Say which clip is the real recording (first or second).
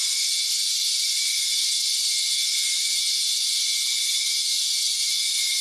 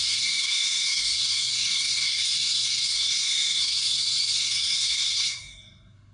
first